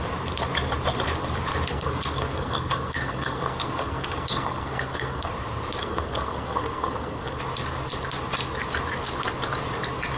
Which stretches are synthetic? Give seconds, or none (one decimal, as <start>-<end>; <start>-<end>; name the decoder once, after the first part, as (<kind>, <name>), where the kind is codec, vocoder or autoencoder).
1.7-5.3 (codec, SNAC); 5.8-7.4